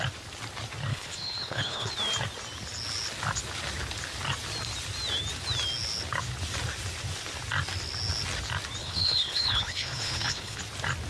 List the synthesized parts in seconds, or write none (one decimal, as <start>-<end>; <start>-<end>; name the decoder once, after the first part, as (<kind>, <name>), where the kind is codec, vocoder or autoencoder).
0.9-1.9 (codec, HILCodec); 8.8-10.6